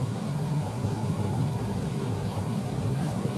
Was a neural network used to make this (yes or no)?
yes